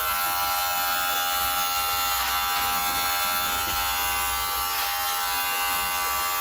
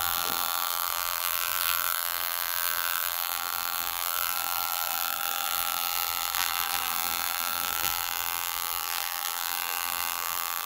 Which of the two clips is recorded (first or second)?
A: first